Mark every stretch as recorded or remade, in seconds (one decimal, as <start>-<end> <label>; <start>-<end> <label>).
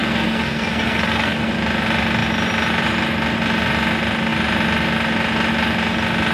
0.0-1.5 remade; 1.5-6.3 recorded